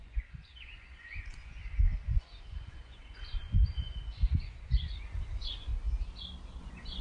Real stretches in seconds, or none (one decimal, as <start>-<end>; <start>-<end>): 5.7-6.6